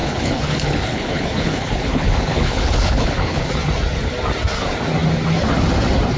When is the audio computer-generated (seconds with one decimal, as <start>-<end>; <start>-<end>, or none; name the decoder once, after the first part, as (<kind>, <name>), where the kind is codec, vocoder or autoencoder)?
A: 0.0-3.5 (codec, HILCodec)